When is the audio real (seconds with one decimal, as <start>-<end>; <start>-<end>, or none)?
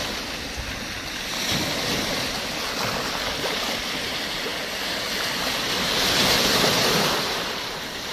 0.0-8.1